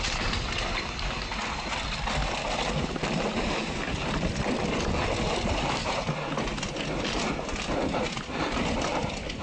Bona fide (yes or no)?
no